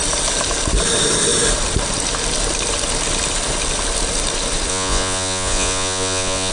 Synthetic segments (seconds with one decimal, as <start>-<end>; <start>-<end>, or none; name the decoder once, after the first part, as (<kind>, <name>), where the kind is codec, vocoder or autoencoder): 4.7-6.5 (vocoder, Vocos)

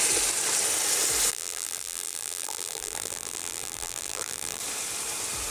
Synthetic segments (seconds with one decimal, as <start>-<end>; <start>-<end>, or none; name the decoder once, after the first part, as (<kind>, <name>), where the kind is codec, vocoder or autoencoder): 1.3-4.6 (vocoder, BigVGAN v2)

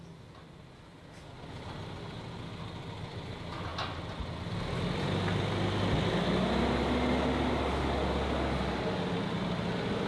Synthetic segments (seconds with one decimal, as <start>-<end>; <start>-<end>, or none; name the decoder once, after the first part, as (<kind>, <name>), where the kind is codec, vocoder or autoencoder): none

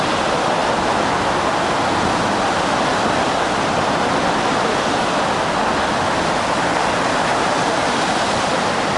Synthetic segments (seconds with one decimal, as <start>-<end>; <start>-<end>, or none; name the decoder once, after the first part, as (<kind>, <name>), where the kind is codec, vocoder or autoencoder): none

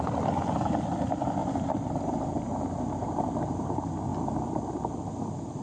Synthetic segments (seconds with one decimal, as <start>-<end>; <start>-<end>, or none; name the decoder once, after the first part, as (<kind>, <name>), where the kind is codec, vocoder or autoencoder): 0.0-1.4 (vocoder, BigVGAN v2); 3.2-5.6